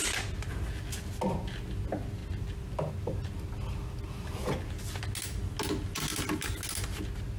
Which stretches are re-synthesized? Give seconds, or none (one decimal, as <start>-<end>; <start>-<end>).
none